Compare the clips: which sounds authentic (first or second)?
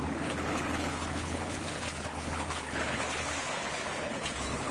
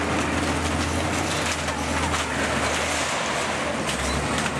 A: second